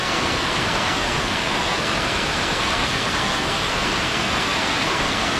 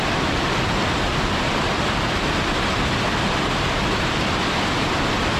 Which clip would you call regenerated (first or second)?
first